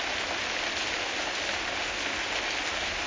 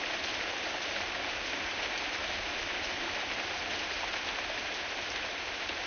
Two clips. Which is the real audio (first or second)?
first